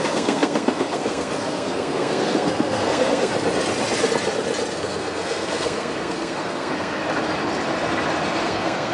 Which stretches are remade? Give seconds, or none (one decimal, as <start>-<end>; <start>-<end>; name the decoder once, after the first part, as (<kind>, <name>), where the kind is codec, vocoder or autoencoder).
0.0-3.3 (codec, SNAC); 4.7-7.0; 8.4-8.9